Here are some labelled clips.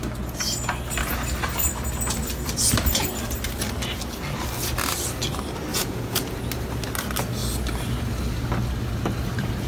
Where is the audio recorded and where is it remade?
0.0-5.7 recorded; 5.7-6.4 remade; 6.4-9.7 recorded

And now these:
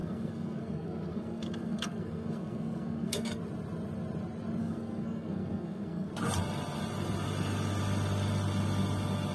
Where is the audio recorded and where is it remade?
0.0-3.4 remade; 3.4-4.6 recorded; 4.6-6.1 remade; 6.1-9.3 recorded